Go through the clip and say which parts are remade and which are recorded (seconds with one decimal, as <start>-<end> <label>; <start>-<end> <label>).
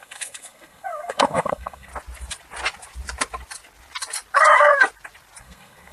0.0-1.9 remade; 1.9-5.4 recorded; 5.4-5.9 remade